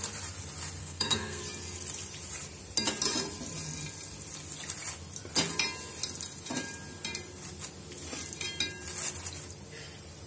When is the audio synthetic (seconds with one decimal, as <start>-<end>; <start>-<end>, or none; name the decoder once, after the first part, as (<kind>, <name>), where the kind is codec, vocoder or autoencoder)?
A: 0.8-1.4 (codec, SNAC)